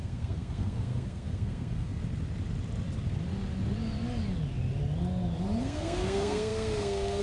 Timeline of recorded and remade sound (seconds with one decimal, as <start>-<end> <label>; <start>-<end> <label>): 0.0-2.0 remade; 2.0-5.6 recorded; 5.6-7.2 remade